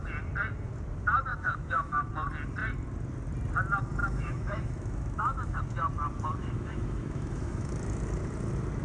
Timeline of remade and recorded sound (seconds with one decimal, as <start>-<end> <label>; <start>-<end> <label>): 0.0-1.3 recorded; 1.3-2.1 remade; 2.1-4.0 recorded; 4.0-5.6 remade; 5.6-6.4 recorded; 6.4-7.7 remade; 7.7-8.8 recorded